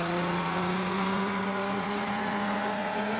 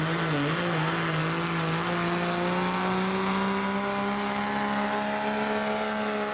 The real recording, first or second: second